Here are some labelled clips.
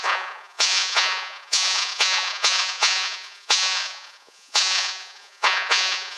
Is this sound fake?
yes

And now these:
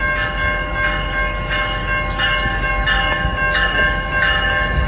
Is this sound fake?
no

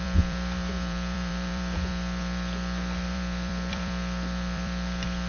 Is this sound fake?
yes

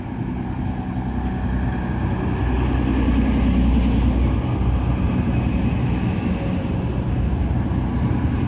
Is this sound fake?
no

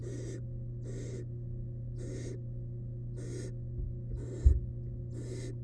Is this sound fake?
no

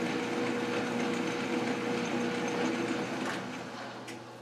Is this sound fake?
no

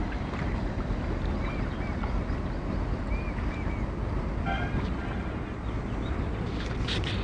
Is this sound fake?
no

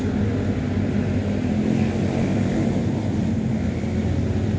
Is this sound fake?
no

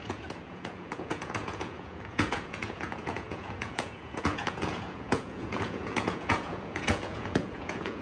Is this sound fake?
yes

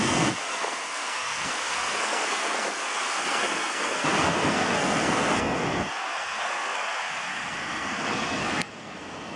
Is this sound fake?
yes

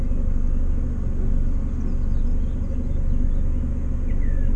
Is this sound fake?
no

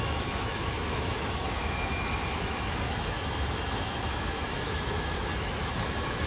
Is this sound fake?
yes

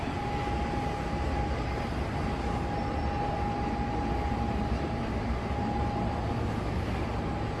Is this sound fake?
no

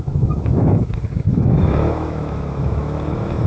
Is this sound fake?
yes